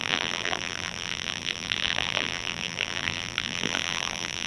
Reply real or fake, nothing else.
fake